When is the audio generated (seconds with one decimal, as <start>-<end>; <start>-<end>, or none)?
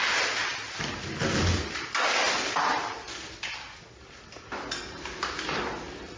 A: none